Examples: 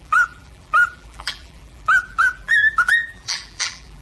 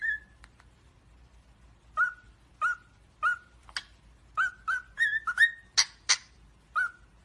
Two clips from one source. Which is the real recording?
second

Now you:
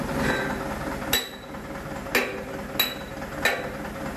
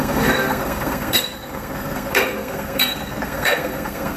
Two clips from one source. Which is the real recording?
first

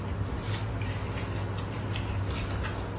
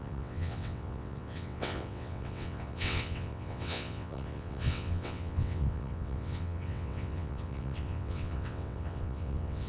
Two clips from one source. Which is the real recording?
first